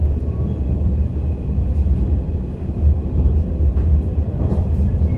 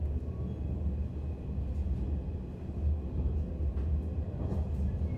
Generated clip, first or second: first